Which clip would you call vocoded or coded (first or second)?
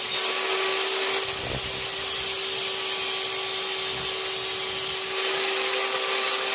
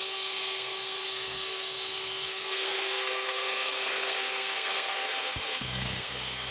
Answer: second